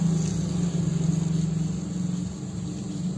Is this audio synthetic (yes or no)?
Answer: no